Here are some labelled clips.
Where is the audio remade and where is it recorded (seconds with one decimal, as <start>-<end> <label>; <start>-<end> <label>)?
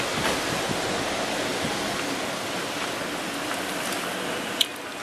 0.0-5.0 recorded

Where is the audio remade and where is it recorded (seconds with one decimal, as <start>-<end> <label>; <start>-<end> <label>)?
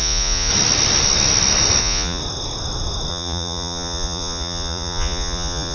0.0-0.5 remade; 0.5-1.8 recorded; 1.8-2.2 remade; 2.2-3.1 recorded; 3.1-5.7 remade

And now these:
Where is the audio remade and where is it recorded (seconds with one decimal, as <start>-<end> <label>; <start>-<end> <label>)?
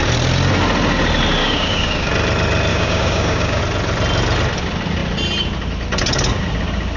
0.0-1.4 recorded; 1.4-2.1 remade; 2.1-2.7 recorded; 2.7-3.6 remade; 3.6-7.0 recorded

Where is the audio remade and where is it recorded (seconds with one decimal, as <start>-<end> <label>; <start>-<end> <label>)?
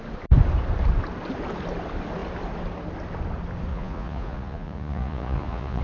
0.0-3.7 recorded; 3.7-5.8 remade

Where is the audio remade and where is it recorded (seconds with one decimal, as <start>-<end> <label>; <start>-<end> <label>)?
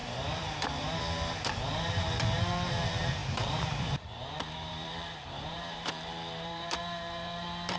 0.0-7.8 remade